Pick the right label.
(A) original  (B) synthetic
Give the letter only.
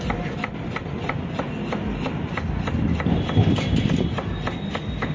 A